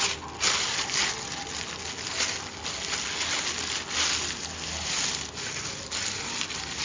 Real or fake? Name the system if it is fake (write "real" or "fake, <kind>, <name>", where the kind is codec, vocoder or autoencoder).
real